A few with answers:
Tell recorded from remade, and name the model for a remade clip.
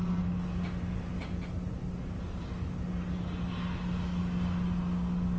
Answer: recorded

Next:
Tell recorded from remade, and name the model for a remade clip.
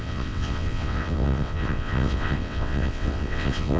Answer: remade, vocoder, WaveNeXt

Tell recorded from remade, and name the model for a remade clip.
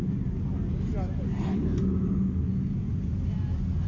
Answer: recorded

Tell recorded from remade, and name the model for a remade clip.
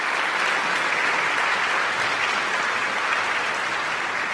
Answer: recorded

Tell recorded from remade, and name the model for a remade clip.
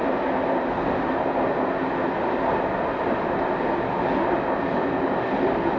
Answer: recorded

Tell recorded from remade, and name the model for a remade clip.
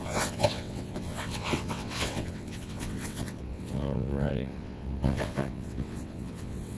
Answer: remade, vocoder, WaveNeXt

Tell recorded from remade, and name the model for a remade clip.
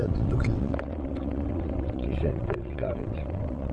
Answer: remade, vocoder, WaveNeXt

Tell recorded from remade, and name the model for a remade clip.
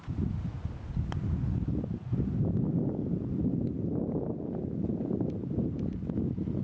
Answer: recorded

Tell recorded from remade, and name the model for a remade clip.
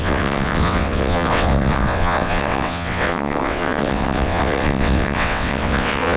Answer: remade, vocoder, WaveNeXt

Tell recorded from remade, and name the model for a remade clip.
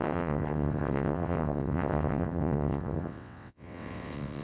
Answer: remade, vocoder, WaveNeXt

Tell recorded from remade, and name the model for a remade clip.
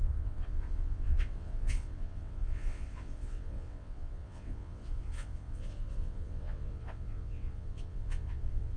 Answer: remade, vocoder, WaveNeXt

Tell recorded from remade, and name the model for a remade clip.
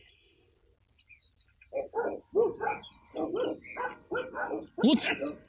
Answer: recorded